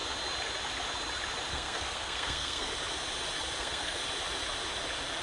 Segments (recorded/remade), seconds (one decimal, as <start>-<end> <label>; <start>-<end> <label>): 0.0-1.5 recorded; 1.5-2.7 remade; 2.7-3.6 recorded; 3.6-4.0 remade; 4.0-5.2 recorded